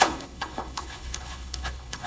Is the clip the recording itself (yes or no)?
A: no